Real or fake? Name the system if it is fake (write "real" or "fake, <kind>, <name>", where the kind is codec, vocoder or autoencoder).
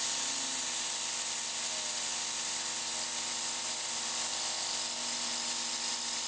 real